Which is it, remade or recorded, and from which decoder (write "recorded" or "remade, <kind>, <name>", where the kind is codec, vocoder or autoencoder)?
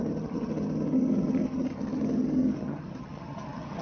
remade, vocoder, HiFi-GAN